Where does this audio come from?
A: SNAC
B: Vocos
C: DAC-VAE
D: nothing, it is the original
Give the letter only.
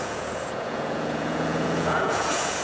B